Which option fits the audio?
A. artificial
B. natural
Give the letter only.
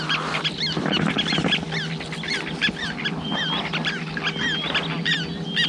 B